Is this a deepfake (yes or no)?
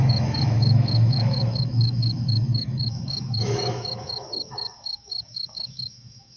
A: yes